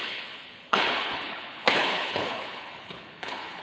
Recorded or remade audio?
remade